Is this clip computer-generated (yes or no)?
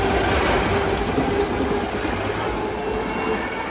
no